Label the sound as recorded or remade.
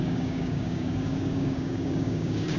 remade